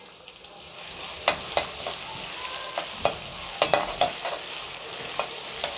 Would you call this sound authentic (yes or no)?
yes